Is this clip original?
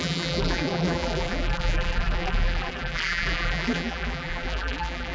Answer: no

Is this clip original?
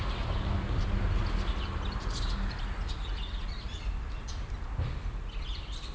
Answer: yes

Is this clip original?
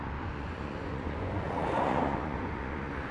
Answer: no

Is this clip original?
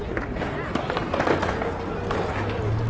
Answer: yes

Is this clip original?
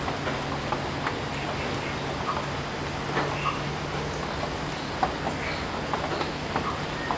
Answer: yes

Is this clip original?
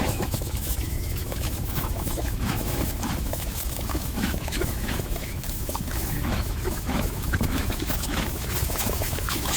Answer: no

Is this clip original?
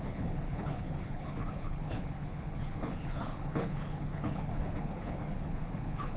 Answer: no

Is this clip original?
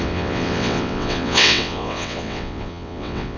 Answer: no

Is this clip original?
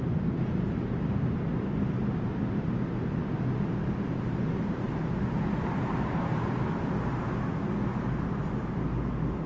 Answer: yes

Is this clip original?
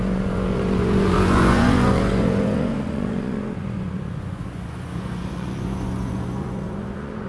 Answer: no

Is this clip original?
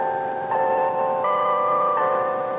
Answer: yes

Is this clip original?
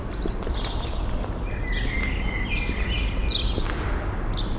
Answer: yes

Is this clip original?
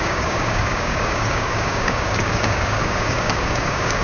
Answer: no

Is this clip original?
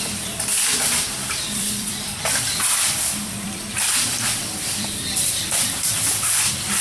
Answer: no